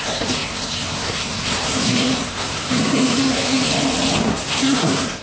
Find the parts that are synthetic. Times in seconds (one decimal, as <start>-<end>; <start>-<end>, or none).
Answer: 0.0-3.7; 4.2-5.2